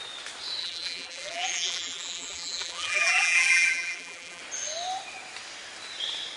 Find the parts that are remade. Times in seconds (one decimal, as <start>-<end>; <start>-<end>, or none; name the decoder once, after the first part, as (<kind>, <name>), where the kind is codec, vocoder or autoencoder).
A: 0.6-4.4 (vocoder, BigVGAN v2)